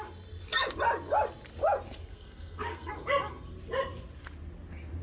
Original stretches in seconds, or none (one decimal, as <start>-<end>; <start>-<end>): 0.0-2.1; 2.9-5.0